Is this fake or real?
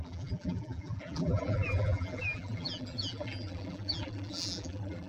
fake